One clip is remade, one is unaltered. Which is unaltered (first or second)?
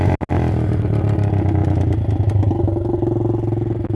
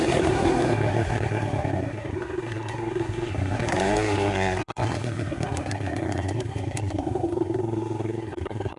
first